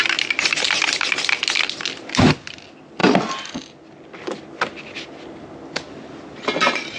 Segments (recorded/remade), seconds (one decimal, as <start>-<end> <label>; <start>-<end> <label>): 0.0-7.0 recorded